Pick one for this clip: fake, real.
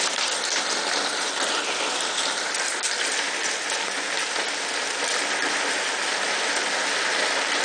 real